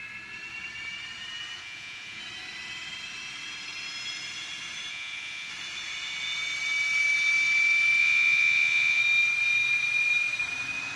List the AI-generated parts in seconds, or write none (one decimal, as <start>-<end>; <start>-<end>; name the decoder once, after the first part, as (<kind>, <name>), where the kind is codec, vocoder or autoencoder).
1.6-2.2 (vocoder, Vocos); 4.9-5.5; 8.0-9.0